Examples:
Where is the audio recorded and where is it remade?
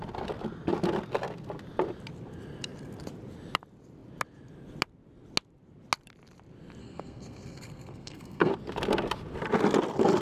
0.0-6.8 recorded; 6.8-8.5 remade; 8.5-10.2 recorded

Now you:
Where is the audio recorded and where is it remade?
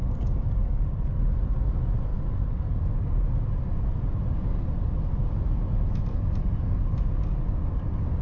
0.0-8.2 recorded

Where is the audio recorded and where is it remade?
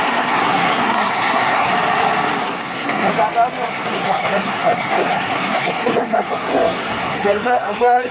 0.0-1.7 remade; 1.7-2.4 recorded; 2.4-3.1 remade; 3.1-3.7 recorded; 3.7-8.1 remade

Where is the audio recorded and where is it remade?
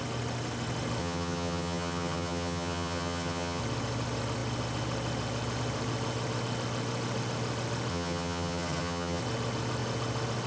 0.0-1.0 recorded; 1.0-3.6 remade; 3.6-7.9 recorded; 7.9-9.2 remade; 9.2-10.5 recorded